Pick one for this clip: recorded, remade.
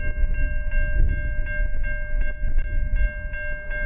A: recorded